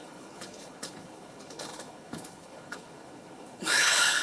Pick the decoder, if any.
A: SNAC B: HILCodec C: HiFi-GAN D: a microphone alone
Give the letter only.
B